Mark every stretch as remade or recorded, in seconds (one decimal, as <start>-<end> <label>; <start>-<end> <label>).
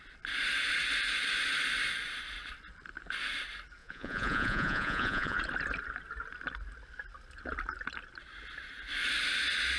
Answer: 0.0-3.8 recorded; 3.8-5.4 remade; 5.4-9.8 recorded